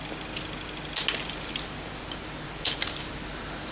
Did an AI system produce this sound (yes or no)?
no